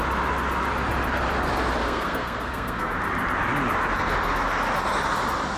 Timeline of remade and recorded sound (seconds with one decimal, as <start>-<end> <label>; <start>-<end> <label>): 0.0-1.8 recorded; 1.8-2.9 remade; 2.9-5.6 recorded